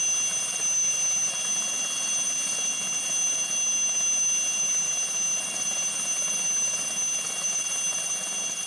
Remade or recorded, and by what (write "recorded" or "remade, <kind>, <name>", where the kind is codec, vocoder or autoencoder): recorded